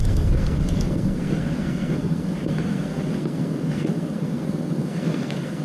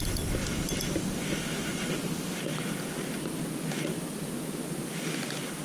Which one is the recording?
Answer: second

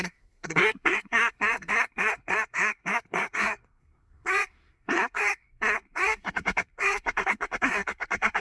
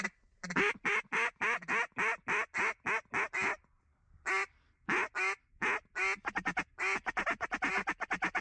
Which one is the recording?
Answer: second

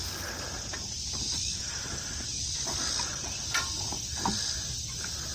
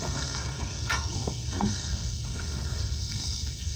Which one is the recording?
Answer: first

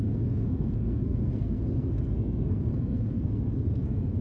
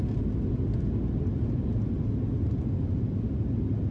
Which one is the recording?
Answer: second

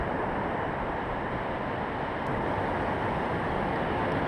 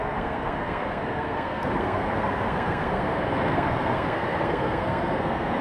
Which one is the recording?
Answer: first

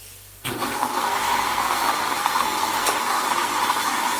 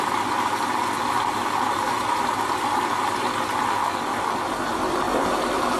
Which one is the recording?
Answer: second